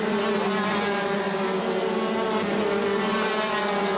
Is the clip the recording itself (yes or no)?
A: yes